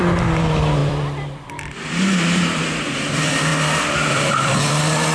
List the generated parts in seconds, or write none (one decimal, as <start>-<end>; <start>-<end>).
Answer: 0.0-3.5; 4.1-5.1